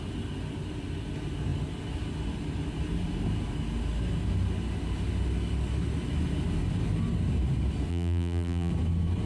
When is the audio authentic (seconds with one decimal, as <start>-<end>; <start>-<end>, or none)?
0.0-7.9; 8.7-9.3

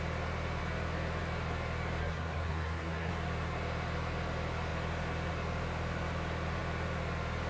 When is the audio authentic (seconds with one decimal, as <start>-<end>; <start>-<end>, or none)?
0.0-2.0; 3.1-7.5

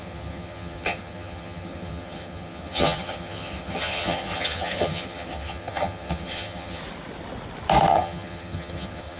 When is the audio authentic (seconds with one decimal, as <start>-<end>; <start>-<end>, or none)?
6.8-7.9

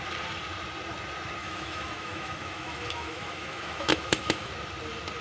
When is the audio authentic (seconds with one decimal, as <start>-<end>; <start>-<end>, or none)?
0.0-1.4; 4.5-5.2

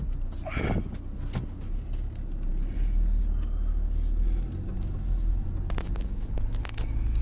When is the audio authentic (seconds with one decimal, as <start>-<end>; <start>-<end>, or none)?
0.0-7.2

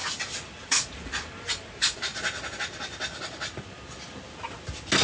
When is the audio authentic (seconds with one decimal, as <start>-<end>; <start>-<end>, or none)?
0.0-0.6; 2.1-5.0

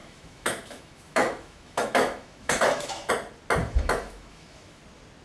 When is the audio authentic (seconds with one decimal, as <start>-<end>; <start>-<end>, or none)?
3.1-3.6; 4.8-5.2